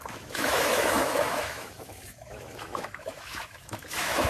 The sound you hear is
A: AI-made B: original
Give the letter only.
A